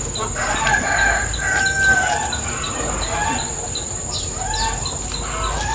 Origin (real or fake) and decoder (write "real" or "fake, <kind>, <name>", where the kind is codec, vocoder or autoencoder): real